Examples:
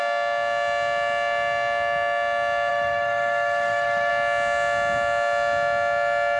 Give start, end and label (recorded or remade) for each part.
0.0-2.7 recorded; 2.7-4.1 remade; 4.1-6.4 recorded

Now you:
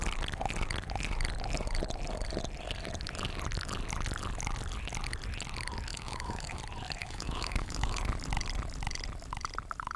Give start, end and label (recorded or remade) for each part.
0.0-5.9 recorded; 5.9-6.6 remade; 6.6-7.0 recorded; 7.0-8.0 remade; 8.0-10.0 recorded

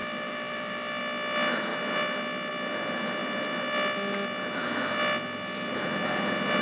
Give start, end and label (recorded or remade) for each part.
0.0-1.0 remade; 1.0-6.6 recorded

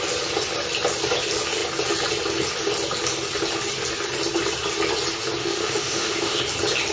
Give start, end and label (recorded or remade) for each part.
0.0-5.4 recorded; 5.4-6.4 remade; 6.4-6.9 recorded

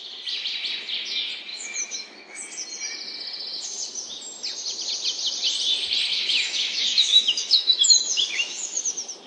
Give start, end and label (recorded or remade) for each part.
0.0-1.5 recorded; 1.5-2.4 remade; 2.4-6.1 recorded; 6.1-8.8 remade; 8.8-9.3 recorded

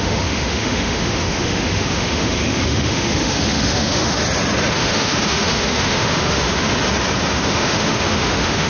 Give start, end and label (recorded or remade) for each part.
0.0-4.2 remade; 4.2-4.7 recorded; 4.7-6.7 remade; 6.7-7.3 recorded; 7.3-8.7 remade